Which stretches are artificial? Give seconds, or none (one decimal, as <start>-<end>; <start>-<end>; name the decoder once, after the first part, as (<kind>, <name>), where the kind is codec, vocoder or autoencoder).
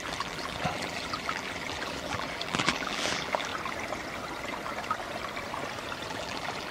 0.0-3.5 (vocoder, BigVGAN v2); 6.1-6.7